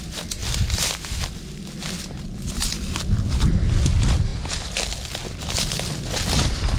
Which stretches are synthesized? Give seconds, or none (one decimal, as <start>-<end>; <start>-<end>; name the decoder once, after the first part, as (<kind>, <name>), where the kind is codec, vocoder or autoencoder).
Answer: none